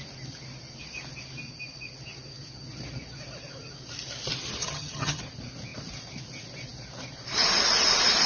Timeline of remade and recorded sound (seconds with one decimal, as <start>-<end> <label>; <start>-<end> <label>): 0.0-4.6 recorded; 4.6-5.2 remade; 5.2-8.3 recorded